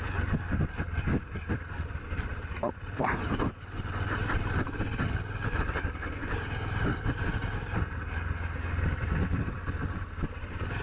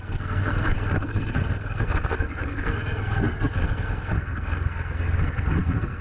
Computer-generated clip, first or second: second